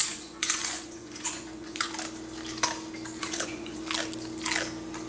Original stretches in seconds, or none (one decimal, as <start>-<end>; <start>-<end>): 1.9-3.2; 3.8-5.1